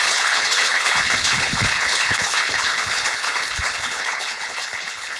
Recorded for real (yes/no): no